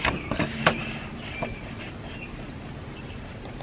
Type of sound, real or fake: real